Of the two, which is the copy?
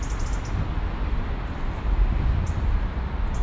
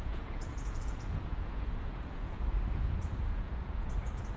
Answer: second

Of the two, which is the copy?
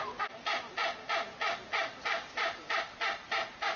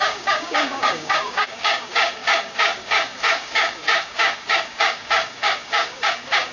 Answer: second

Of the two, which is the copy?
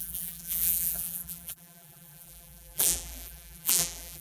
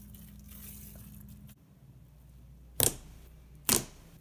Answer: first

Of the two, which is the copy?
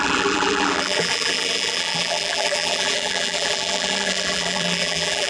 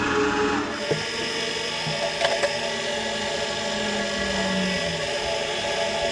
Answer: first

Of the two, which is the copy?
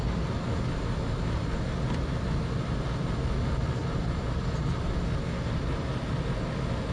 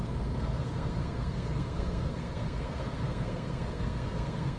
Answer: second